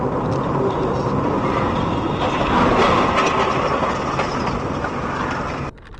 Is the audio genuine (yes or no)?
yes